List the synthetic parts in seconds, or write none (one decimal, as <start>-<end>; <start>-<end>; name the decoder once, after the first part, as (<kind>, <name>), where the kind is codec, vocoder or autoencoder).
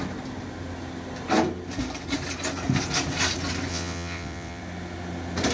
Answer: 3.7-4.6 (vocoder, WaveNeXt)